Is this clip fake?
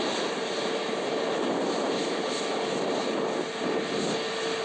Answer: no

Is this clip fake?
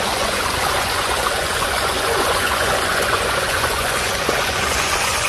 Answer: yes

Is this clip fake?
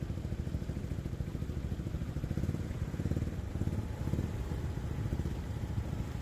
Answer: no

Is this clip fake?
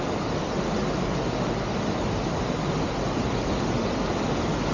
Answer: no